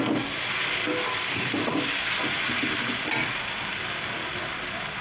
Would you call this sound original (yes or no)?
yes